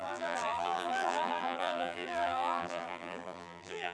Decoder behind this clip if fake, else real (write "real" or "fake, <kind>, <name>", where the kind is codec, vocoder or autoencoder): fake, vocoder, BigVGAN v2